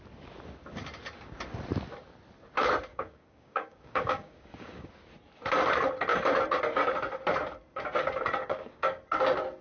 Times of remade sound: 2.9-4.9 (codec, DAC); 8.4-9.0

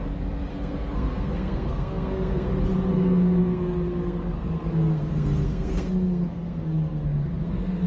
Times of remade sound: 0.5-2.5 (codec, SNAC); 2.9-7.9

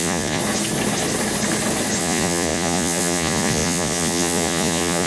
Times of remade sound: 0.0-0.4 (vocoder, Vocos); 2.0-5.1